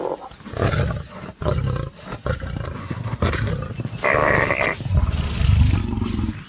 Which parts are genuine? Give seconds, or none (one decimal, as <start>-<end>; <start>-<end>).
0.0-2.8; 3.5-6.5

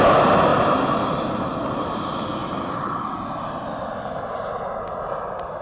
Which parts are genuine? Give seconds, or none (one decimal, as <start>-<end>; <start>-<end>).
0.0-5.6

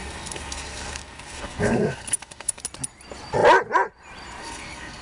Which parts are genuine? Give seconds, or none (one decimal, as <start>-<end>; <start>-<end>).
2.6-4.4

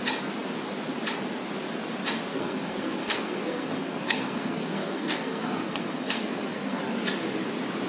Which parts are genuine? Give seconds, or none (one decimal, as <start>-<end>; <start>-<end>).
0.0-2.3; 6.8-7.9

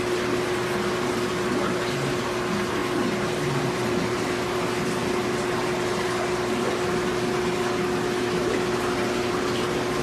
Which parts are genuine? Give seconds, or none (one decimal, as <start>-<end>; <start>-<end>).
0.0-10.0